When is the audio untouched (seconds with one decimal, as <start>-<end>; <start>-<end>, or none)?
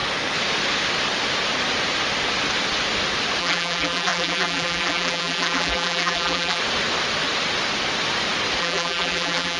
0.0-3.4; 6.6-8.6